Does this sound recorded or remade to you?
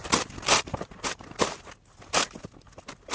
recorded